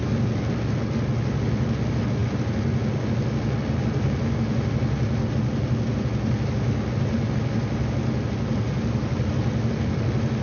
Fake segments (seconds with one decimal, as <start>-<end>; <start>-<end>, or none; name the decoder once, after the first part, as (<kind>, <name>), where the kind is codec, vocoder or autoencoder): none